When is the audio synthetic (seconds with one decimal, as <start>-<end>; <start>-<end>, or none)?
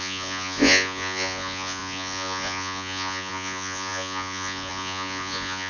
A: 0.0-5.7